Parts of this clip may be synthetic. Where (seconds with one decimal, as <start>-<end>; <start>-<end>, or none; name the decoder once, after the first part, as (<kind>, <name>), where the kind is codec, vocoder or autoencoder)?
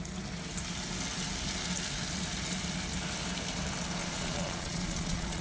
4.0-5.4 (vocoder, Vocos)